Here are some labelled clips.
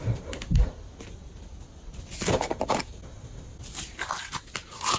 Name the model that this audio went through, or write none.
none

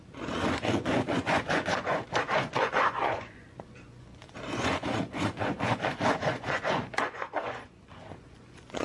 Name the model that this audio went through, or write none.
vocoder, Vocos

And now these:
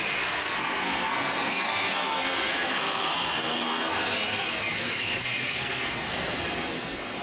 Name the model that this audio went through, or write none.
codec, SNAC